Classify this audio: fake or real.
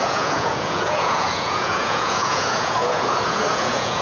fake